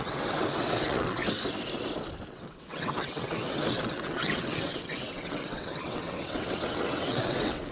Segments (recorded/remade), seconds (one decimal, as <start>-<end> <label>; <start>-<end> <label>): 0.0-1.2 remade; 1.2-2.3 recorded; 2.3-7.7 remade